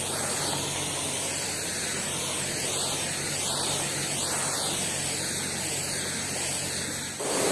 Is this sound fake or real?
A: real